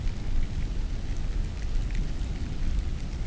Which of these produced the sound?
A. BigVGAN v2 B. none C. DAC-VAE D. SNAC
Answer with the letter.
B